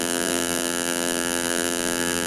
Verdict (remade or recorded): remade